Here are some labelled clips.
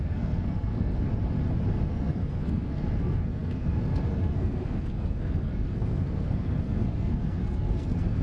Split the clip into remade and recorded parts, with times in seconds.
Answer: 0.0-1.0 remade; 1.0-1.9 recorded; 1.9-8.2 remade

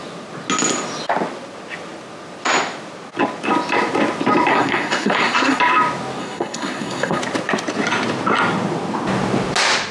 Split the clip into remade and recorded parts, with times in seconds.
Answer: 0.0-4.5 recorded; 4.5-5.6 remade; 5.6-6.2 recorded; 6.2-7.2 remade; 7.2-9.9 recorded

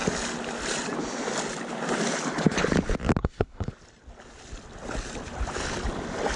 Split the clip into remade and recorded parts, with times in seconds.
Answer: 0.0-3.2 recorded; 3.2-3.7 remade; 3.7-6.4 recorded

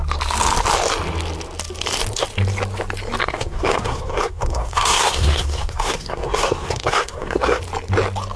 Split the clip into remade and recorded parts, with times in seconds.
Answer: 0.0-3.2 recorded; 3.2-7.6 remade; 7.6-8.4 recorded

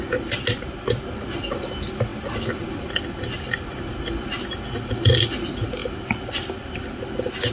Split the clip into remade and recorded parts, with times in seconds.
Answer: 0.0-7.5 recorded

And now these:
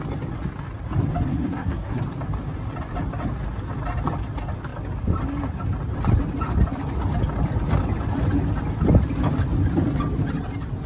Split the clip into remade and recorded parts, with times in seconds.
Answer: 0.0-1.3 recorded; 1.3-2.0 remade; 2.0-10.9 recorded